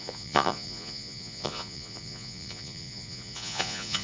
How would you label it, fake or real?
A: fake